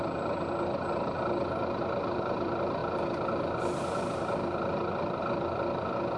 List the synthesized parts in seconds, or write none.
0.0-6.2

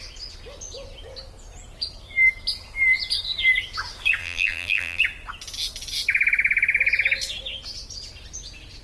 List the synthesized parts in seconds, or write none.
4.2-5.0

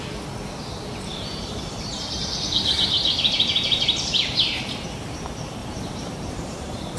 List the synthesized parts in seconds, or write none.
1.1-4.6; 5.6-7.0

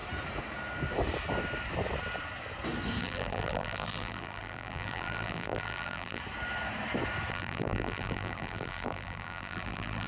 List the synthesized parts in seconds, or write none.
3.0-6.2; 7.3-10.1